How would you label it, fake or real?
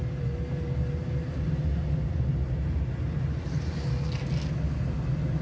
real